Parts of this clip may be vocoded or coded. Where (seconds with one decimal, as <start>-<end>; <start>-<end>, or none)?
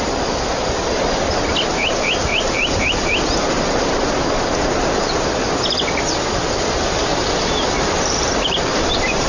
2.2-3.1; 7.1-9.3